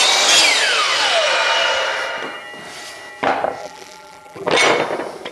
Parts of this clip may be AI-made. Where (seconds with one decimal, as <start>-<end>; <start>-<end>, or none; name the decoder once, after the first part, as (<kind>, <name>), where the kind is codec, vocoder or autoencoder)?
3.6-4.5 (vocoder, BigVGAN v2)